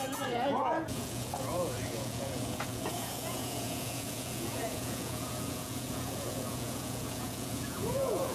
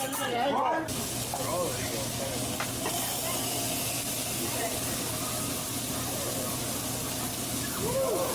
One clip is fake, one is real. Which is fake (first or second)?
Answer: first